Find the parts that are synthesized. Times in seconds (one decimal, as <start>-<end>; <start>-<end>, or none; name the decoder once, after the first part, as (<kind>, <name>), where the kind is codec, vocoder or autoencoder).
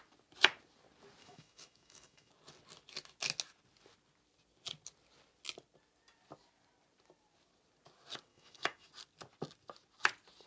1.2-2.3 (autoencoder, DAC-VAE); 8.3-8.9